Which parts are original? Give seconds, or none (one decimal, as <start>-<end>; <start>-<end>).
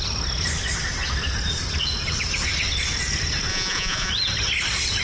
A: 0.0-3.5; 4.1-5.0